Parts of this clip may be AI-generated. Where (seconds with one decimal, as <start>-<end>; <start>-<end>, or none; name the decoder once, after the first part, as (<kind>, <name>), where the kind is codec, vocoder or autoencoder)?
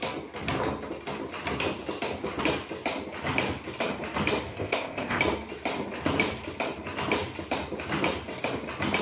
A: 4.5-5.2 (codec, ZipCodec)